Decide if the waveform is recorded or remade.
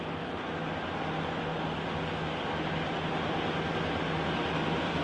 recorded